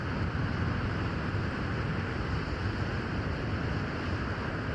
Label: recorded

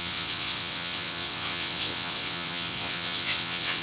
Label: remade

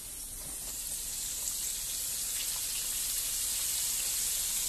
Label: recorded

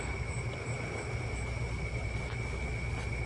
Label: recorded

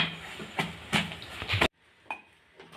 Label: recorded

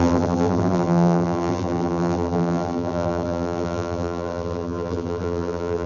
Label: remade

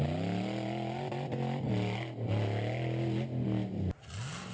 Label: recorded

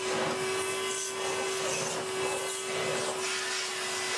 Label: recorded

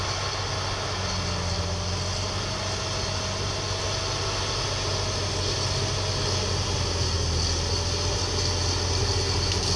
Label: recorded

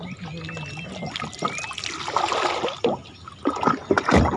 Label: recorded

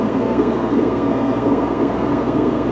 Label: remade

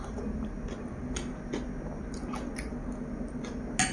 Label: recorded